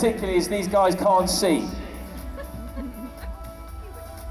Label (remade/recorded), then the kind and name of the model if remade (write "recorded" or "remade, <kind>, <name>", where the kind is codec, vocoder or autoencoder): recorded